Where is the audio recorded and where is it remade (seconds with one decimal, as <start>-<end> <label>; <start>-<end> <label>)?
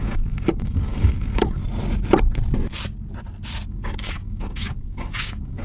0.0-1.6 remade; 1.6-3.7 recorded; 3.7-5.6 remade